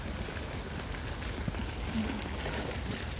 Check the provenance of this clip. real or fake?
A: real